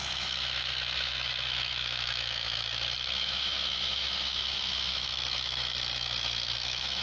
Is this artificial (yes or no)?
yes